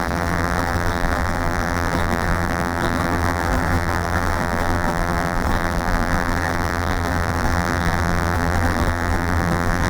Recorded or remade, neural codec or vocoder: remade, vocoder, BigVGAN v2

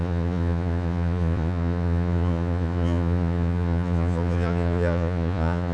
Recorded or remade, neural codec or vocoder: remade, vocoder, Vocos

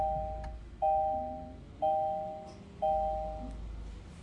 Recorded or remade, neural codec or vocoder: recorded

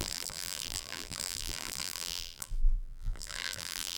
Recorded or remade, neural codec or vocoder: remade, vocoder, BigVGAN v2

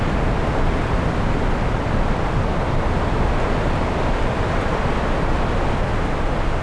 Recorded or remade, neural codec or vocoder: recorded